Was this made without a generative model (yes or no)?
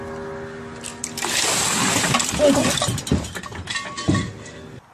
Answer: yes